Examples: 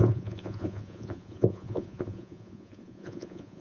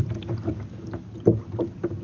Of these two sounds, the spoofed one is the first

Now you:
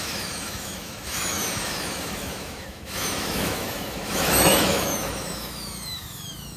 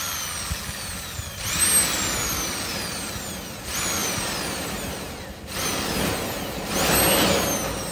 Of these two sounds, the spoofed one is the first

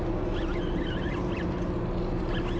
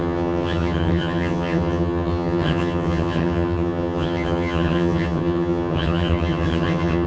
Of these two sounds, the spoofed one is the second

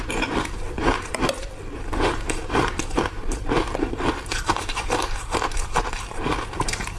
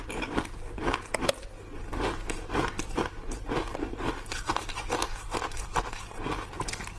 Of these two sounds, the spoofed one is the first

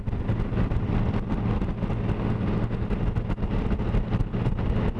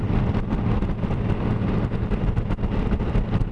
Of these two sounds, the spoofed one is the second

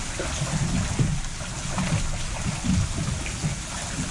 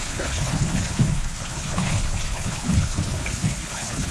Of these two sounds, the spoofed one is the second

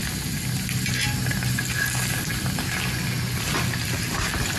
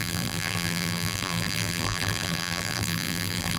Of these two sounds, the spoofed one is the second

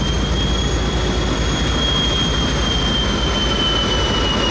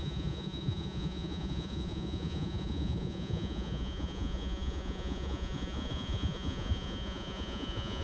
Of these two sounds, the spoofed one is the second